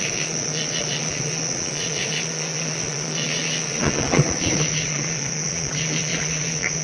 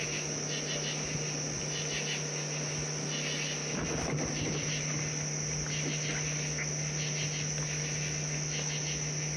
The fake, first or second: first